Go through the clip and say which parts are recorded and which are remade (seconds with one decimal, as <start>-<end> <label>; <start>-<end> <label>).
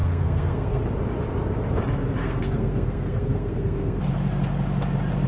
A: 0.0-0.8 remade; 0.8-2.2 recorded; 2.2-4.0 remade; 4.0-5.3 recorded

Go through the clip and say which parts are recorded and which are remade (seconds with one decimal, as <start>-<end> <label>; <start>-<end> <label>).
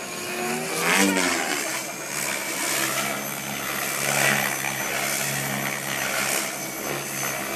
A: 0.0-7.6 recorded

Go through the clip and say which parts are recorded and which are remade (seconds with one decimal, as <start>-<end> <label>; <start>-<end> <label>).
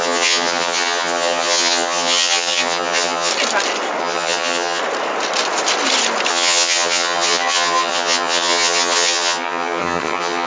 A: 0.0-3.3 remade; 3.3-4.0 recorded; 4.0-4.8 remade; 4.8-6.3 recorded; 6.3-10.5 remade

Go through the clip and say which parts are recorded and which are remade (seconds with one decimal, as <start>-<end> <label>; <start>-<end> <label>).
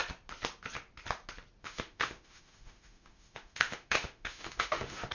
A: 0.0-1.6 recorded; 1.6-5.1 remade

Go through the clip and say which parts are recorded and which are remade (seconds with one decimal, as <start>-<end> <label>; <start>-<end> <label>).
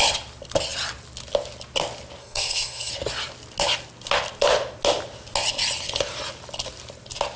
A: 0.0-2.2 recorded; 2.2-2.9 remade; 2.9-7.4 recorded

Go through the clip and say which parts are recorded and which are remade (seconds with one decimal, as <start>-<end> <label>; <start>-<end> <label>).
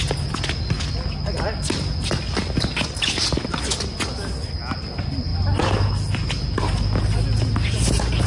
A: 0.0-8.3 recorded